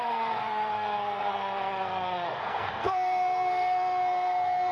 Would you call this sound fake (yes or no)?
yes